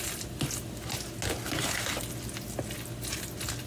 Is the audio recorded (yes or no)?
yes